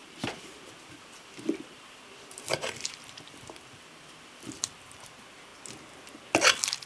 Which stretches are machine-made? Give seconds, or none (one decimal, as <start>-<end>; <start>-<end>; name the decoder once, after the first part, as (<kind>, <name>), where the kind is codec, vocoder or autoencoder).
0.0-5.5 (vocoder, BigVGAN v2); 6.2-6.9